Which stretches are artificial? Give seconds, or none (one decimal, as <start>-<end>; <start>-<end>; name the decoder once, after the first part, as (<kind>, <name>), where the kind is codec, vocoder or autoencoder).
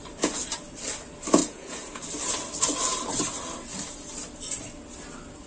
1.4-2.0 (vocoder, Vocos)